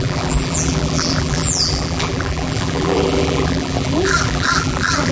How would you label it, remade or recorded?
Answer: remade